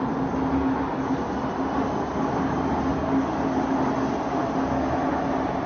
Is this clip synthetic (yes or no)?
no